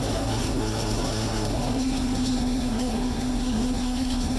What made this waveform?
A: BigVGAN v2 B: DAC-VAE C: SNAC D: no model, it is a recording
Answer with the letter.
C